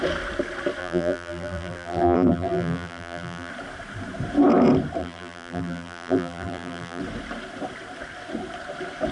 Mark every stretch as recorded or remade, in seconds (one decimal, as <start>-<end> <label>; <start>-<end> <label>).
0.0-0.8 recorded; 0.8-3.5 remade; 3.5-5.0 recorded; 5.0-7.0 remade; 7.0-9.1 recorded